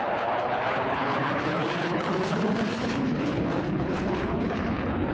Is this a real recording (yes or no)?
no